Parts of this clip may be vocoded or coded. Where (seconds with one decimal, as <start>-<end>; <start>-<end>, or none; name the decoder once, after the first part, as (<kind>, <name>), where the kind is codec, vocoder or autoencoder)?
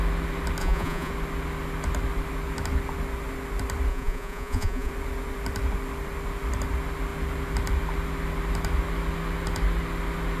0.6-1.1 (vocoder, Vocos); 3.9-4.9